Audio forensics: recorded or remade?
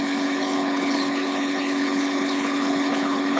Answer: remade